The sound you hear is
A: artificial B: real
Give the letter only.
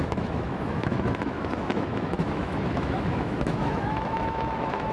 A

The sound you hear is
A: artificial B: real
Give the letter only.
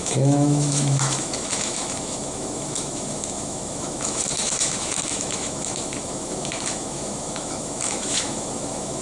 A